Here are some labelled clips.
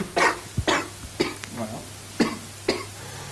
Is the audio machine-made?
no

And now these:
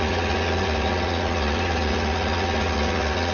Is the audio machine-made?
yes